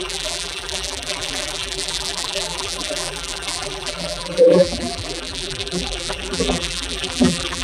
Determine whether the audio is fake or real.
fake